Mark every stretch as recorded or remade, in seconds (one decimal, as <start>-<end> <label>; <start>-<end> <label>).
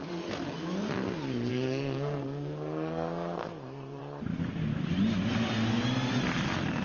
0.0-1.5 recorded; 1.5-4.0 remade; 4.0-6.8 recorded